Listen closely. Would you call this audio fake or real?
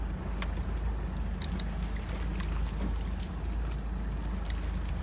real